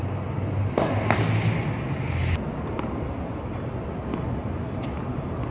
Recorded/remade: recorded